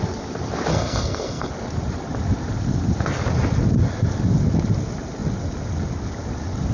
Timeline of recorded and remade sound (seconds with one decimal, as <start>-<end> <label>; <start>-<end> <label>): 0.0-0.7 recorded; 0.7-1.5 remade; 1.5-6.7 recorded